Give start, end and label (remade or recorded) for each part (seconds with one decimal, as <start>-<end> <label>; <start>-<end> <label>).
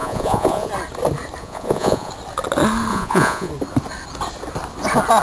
0.0-0.7 remade; 0.7-1.4 recorded; 1.4-2.1 remade; 2.1-2.9 recorded; 2.9-3.5 remade; 3.5-5.2 recorded